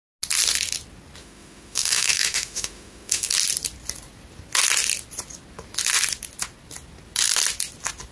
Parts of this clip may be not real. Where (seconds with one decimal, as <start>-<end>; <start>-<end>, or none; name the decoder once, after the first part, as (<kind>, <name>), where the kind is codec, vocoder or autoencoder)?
1.2-3.3 (autoencoder, DAC-VAE)